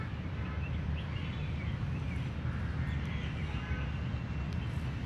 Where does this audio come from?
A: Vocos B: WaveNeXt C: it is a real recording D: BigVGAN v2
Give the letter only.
C